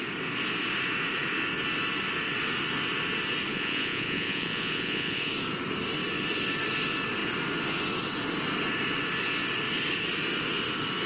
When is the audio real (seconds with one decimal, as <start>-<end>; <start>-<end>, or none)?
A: 0.0-3.5; 5.3-11.1